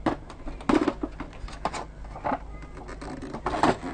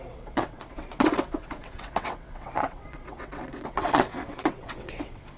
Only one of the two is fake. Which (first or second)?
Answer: second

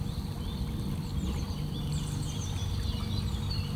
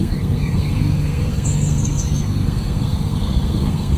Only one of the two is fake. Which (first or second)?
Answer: second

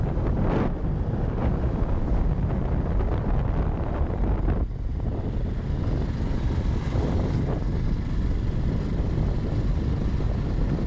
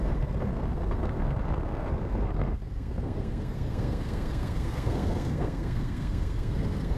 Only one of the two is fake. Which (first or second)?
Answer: second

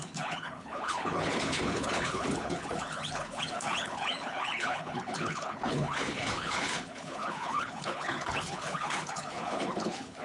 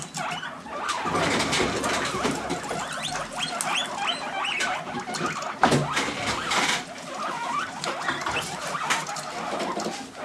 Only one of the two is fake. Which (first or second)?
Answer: first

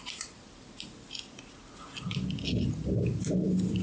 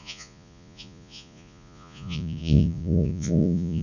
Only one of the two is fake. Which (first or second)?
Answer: second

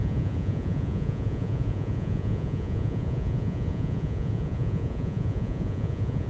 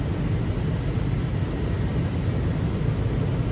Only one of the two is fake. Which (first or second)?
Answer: first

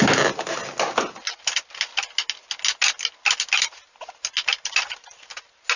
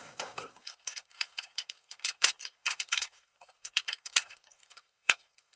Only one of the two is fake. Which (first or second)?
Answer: second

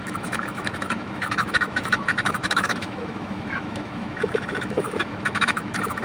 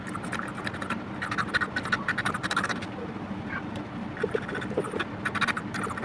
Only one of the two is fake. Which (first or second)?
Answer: first